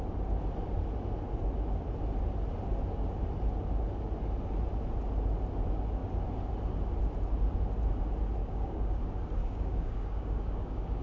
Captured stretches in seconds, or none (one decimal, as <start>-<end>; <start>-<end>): 0.0-8.4; 9.0-9.4